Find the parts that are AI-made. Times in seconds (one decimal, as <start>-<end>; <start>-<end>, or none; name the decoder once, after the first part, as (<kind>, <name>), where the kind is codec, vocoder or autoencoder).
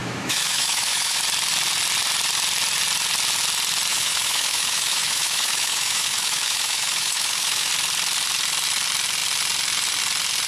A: 0.0-1.2 (autoencoder, DAC-VAE); 3.9-7.7